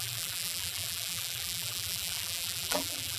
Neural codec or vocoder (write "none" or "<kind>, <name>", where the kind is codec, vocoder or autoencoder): vocoder, BigVGAN v2